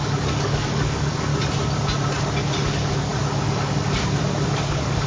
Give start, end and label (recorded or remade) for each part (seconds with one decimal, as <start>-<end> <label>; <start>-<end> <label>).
0.0-1.3 remade; 1.3-2.7 recorded; 2.7-5.1 remade

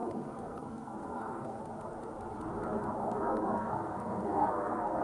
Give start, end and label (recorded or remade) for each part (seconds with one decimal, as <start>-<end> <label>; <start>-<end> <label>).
0.0-1.6 remade; 1.6-3.0 recorded; 3.0-5.0 remade

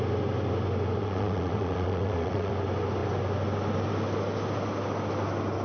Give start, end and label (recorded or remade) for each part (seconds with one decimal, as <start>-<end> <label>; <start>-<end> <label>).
0.0-1.0 recorded; 1.0-2.5 remade; 2.5-5.6 recorded

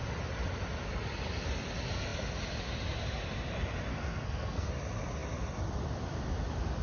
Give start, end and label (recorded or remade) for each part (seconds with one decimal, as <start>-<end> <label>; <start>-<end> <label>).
0.0-3.9 recorded; 3.9-4.7 remade; 4.7-6.8 recorded

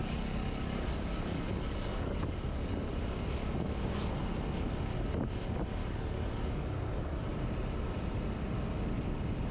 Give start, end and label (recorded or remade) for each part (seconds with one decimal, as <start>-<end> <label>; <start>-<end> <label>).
0.0-2.9 remade; 2.9-5.8 recorded; 5.8-7.0 remade; 7.0-9.5 recorded